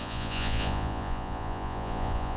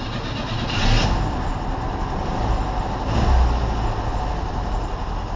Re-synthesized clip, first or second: first